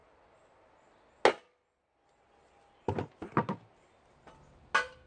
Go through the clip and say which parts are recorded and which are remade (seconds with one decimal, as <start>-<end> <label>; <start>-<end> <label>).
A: 0.0-5.1 recorded